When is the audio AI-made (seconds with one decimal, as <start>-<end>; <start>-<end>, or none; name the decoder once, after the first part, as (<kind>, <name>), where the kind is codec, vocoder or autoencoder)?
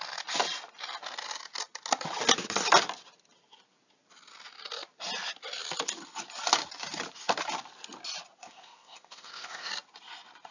8.4-9.7 (codec, ZipCodec)